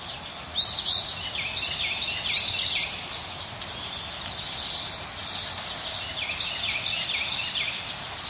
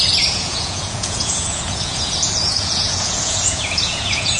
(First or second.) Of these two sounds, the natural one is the first